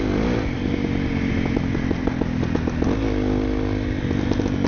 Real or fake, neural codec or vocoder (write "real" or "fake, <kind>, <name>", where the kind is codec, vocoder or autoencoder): real